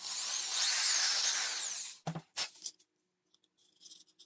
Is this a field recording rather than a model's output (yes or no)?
yes